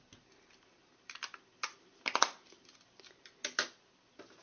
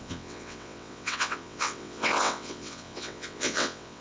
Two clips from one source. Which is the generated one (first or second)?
second